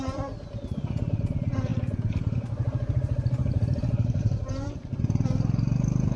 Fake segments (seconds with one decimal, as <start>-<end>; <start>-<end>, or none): 1.7-5.0